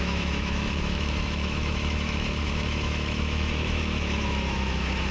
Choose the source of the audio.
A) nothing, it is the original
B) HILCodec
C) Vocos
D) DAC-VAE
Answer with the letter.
D